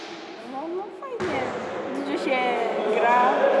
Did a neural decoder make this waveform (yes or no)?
no